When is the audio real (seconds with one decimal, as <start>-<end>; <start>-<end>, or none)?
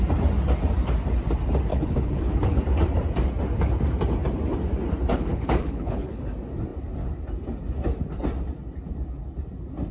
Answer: 0.0-1.7; 2.6-5.1; 6.2-9.9